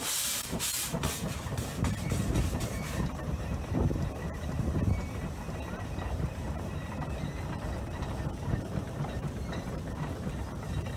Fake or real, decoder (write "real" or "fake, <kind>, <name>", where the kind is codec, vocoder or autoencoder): fake, vocoder, BigVGAN v2